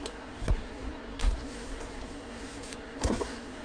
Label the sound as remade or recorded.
remade